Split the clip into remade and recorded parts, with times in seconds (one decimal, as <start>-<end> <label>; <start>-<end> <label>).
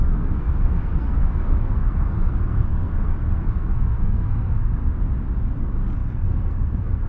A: 0.0-4.8 remade; 4.8-5.6 recorded; 5.6-7.1 remade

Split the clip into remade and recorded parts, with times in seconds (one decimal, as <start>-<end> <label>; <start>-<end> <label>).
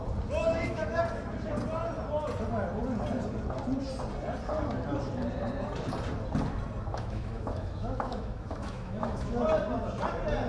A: 0.0-0.4 recorded; 0.4-1.0 remade; 1.0-6.9 recorded; 6.9-9.4 remade; 9.4-10.5 recorded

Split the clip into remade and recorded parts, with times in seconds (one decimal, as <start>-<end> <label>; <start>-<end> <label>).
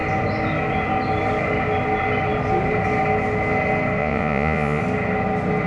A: 0.0-4.0 recorded; 4.0-4.8 remade; 4.8-5.7 recorded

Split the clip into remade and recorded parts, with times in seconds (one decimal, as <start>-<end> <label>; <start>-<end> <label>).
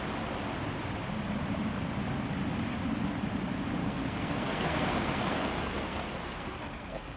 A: 0.0-3.8 recorded; 3.8-7.2 remade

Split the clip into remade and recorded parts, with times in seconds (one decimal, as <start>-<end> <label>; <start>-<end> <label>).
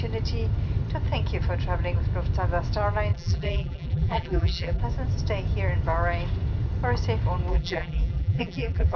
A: 0.0-3.1 recorded; 3.1-4.8 remade; 4.8-7.5 recorded; 7.5-9.0 remade